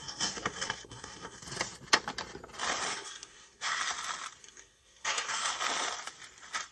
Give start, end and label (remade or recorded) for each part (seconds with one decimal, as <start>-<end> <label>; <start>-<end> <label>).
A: 0.0-1.4 remade; 1.4-2.9 recorded; 2.9-3.8 remade; 3.8-4.4 recorded; 4.4-5.5 remade; 5.5-6.7 recorded